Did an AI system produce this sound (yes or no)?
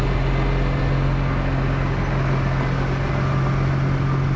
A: no